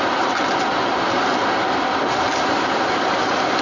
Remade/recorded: recorded